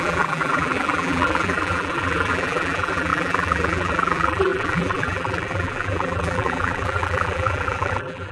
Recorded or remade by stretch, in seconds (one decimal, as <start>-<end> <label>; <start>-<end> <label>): 0.0-8.3 remade